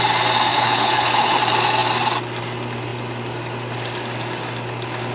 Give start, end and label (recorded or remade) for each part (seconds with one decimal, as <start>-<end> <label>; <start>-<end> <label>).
0.0-0.5 recorded; 0.5-1.4 remade; 1.4-5.1 recorded